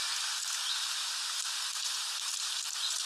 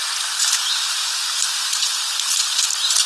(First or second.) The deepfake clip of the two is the second